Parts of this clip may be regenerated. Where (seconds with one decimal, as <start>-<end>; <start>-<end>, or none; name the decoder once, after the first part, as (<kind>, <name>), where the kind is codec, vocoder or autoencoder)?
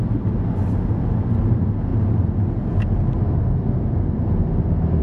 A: none